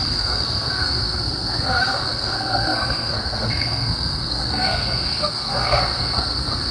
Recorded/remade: remade